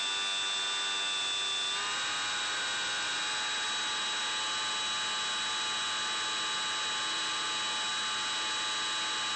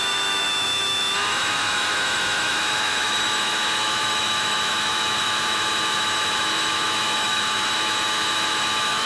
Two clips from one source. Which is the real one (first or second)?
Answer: first